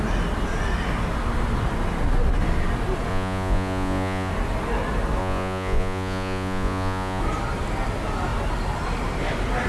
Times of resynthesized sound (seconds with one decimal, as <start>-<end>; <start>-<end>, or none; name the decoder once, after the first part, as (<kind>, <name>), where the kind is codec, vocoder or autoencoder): 3.1-4.3 (vocoder, Vocos); 5.2-7.2